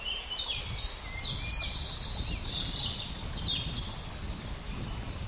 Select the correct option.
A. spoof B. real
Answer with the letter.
B